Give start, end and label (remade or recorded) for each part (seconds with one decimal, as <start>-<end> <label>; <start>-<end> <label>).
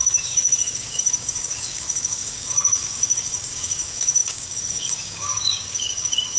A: 0.0-6.4 remade